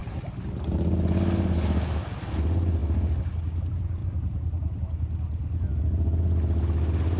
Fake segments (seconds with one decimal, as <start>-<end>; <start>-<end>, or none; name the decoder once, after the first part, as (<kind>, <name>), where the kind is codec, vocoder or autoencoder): 4.0-4.8 (vocoder, BigVGAN v2)

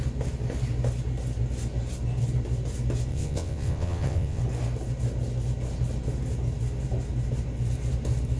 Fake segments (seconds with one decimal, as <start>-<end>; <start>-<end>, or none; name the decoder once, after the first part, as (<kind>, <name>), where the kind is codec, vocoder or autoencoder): 3.1-4.4 (vocoder, WaveNeXt)

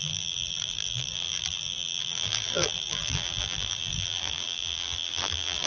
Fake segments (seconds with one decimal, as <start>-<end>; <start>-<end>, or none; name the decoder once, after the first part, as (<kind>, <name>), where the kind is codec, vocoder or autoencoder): 0.0-5.7 (vocoder, BigVGAN v2)

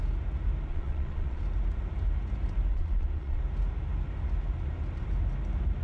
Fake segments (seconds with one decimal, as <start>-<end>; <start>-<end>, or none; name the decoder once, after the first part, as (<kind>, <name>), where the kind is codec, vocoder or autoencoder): 0.7-1.4 (vocoder, Vocos); 2.7-3.4

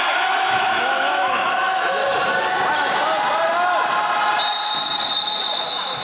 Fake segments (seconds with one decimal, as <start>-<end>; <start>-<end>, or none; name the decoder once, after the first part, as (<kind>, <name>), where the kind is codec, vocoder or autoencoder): 0.0-2.0 (autoencoder, DAC-VAE); 5.6-6.0

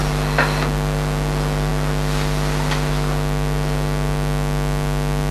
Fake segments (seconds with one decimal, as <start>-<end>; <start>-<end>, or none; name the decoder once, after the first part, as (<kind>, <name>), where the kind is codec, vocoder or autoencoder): none

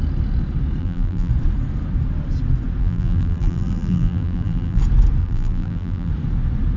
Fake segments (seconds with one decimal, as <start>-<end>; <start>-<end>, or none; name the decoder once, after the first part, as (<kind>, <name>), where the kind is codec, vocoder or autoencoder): 0.8-1.3 (vocoder, BigVGAN v2); 2.8-4.8; 5.2-6.1

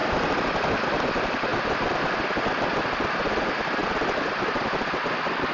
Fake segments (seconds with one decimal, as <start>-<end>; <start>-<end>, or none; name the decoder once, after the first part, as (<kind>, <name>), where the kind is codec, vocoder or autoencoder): none